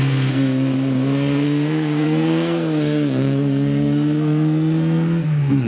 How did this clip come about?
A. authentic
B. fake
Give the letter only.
B